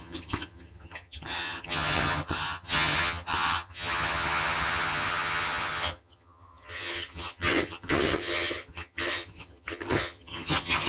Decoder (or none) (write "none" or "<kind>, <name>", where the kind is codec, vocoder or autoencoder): vocoder, HiFi-GAN